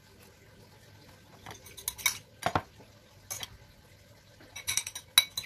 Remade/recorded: recorded